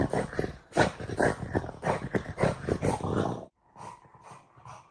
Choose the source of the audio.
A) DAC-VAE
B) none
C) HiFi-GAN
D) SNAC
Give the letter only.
B